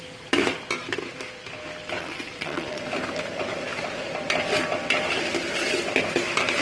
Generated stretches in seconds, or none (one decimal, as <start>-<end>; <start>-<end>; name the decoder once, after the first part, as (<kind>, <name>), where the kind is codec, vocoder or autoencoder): 2.0-2.8 (vocoder, WaveNeXt)